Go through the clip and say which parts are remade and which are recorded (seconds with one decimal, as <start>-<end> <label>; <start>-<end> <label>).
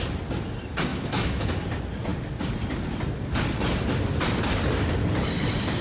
0.0-0.9 recorded; 0.9-1.5 remade; 1.5-5.8 recorded